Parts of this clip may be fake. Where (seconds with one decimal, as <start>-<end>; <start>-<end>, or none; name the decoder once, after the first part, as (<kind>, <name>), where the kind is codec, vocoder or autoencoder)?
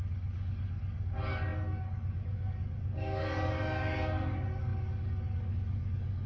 0.0-6.3 (codec, DAC)